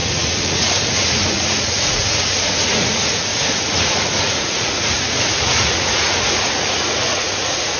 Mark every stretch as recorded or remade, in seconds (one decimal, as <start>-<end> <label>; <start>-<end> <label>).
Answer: 0.0-7.8 remade